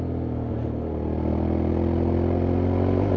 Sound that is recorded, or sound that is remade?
recorded